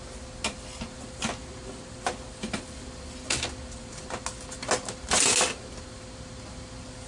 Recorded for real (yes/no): yes